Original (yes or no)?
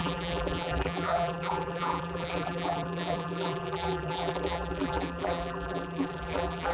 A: no